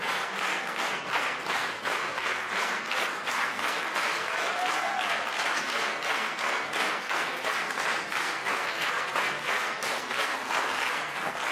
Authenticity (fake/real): fake